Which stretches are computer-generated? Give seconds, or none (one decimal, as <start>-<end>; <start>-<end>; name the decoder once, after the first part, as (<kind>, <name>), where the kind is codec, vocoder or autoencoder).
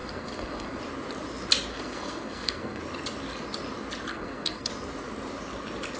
0.0-0.8 (codec, SNAC); 1.7-2.8; 4.1-4.7